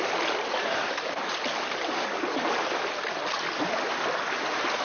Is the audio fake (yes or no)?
no